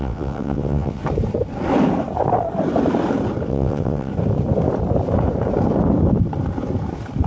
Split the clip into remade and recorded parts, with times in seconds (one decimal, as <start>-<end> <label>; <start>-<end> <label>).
0.0-1.0 remade; 1.0-3.5 recorded; 3.5-4.1 remade; 4.1-7.3 recorded